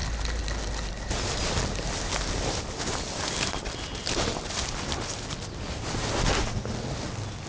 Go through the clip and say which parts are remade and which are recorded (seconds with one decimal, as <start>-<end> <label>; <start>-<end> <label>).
0.0-7.5 recorded